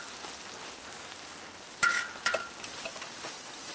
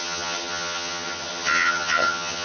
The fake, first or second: second